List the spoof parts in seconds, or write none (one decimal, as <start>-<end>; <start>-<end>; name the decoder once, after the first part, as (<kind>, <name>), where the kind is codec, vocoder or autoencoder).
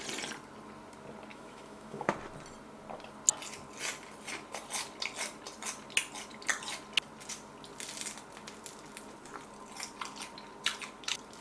1.3-2.1 (autoencoder, DAC-VAE)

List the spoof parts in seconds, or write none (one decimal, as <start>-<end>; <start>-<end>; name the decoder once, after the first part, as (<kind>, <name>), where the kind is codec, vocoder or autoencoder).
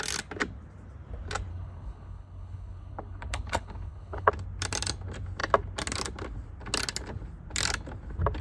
1.5-4.3 (codec, HILCodec)